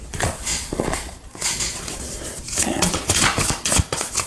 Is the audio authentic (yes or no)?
no